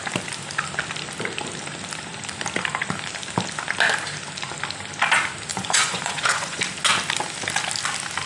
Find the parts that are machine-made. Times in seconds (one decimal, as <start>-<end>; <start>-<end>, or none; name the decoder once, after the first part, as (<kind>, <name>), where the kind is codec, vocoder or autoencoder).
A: 5.5-6.6 (vocoder, Vocos)